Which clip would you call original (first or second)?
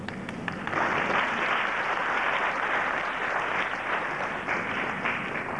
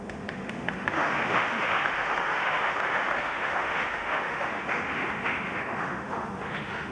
first